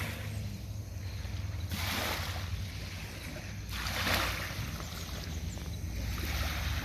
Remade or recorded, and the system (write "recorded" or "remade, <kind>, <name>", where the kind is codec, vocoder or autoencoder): recorded